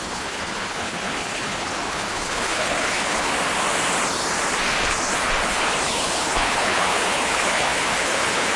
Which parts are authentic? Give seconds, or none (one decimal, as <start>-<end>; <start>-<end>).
3.3-5.5